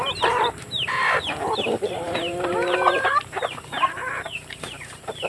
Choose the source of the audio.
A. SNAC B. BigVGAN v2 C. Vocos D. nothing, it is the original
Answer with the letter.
B